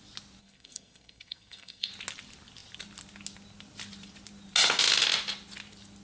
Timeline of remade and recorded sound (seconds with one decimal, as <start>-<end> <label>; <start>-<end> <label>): 0.0-0.4 recorded; 0.4-1.9 remade; 1.9-6.0 recorded